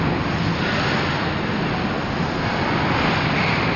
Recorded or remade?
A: recorded